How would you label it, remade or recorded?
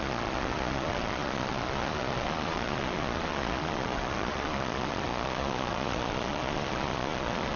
remade